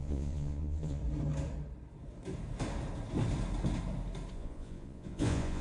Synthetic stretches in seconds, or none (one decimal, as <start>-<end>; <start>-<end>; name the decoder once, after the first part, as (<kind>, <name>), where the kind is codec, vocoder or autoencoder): 0.0-1.0 (vocoder, Vocos); 4.3-5.6